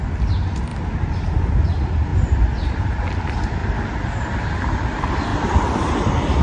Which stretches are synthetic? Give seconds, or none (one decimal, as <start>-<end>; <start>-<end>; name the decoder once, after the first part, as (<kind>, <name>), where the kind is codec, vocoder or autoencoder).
3.6-4.5 (vocoder, BigVGAN v2); 5.3-5.8